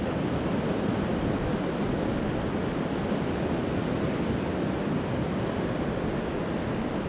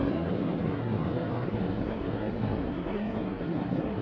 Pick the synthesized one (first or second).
second